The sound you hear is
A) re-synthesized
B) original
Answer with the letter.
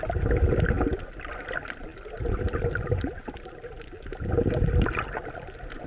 B